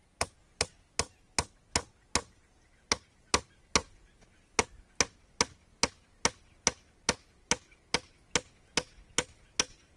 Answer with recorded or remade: recorded